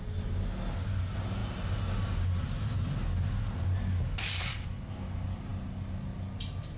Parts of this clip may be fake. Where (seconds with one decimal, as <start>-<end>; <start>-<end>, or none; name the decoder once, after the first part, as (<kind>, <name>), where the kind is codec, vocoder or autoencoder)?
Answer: none